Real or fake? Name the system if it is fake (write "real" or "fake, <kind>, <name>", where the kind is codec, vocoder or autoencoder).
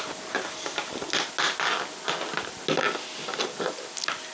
real